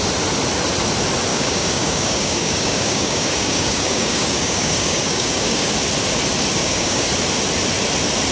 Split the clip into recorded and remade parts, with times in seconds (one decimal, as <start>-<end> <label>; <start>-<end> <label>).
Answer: 0.0-1.3 recorded; 1.3-5.7 remade; 5.7-6.6 recorded; 6.6-7.1 remade; 7.1-8.3 recorded